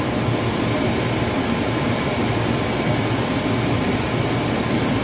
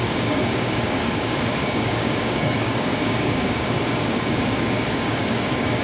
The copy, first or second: second